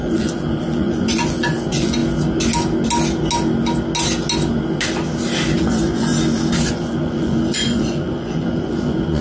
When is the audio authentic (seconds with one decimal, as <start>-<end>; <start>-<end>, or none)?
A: 2.0-5.6; 6.1-6.7